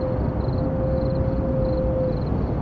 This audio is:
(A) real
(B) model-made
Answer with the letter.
A